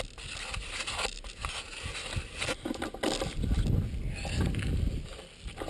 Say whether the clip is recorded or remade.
recorded